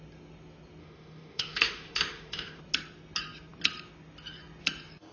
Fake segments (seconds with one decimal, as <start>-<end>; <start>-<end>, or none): 0.8-2.6